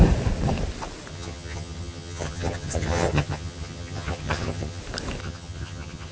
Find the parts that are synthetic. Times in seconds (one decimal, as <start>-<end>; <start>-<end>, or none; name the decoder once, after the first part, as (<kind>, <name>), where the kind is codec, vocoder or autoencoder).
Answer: 1.1-4.8 (vocoder, HiFi-GAN); 5.2-6.1